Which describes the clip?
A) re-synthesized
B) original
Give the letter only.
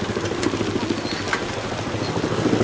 B